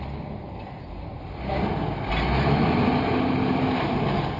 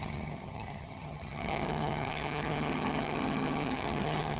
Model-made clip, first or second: second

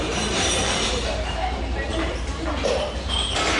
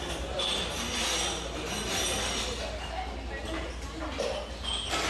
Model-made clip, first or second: first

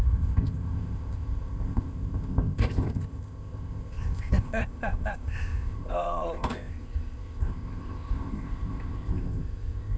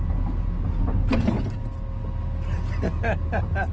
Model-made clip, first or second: first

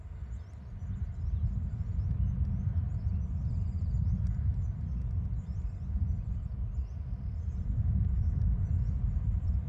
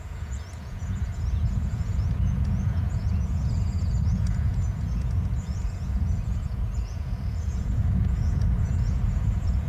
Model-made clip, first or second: second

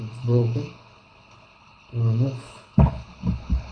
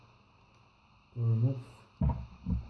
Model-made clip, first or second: first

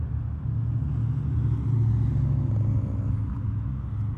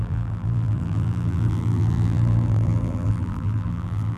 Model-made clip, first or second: second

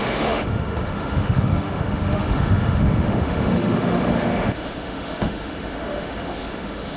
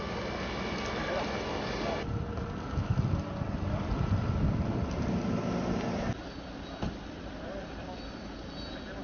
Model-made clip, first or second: first